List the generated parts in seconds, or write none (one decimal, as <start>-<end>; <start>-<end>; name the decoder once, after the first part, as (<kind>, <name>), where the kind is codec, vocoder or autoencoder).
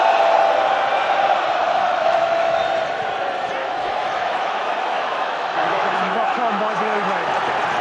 1.6-2.6 (autoencoder, DAC-VAE); 3.6-7.3